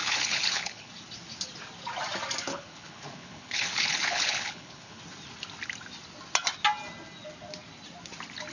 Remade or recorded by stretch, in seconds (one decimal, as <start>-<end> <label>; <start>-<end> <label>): 0.0-0.9 remade; 0.9-2.5 recorded; 2.5-5.0 remade; 5.0-8.5 recorded